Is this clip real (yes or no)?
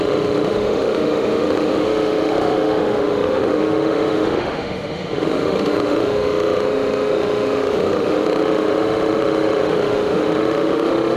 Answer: no